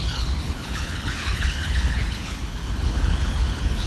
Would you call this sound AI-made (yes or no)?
yes